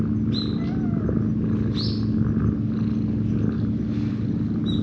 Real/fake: real